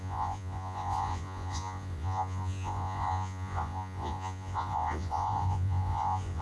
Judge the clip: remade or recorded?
remade